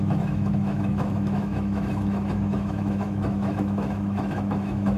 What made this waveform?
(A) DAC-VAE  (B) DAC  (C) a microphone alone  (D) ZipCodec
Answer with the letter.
A